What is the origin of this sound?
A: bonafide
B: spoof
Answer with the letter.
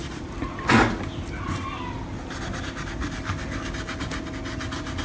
A